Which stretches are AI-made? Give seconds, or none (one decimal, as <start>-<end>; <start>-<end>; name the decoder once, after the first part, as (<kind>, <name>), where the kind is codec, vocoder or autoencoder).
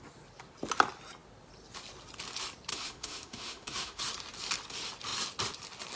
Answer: 2.7-4.0 (autoencoder, DAC-VAE)